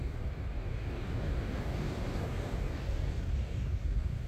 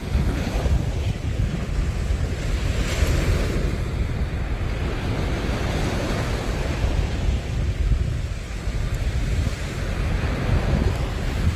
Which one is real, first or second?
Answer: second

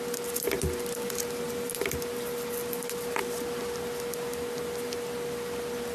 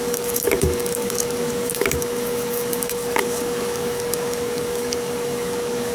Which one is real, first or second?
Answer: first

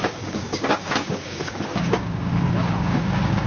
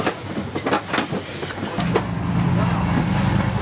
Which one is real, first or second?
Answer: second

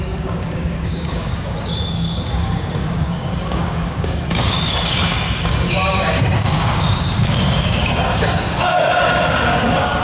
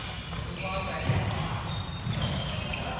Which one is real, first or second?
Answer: second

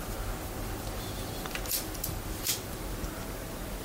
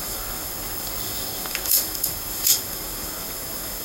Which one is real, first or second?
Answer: first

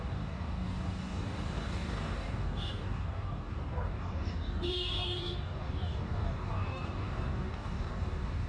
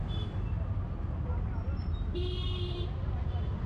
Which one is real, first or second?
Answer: second